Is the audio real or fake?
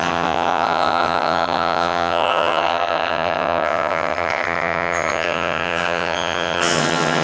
fake